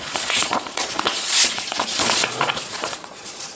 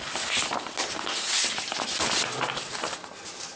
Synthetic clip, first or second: first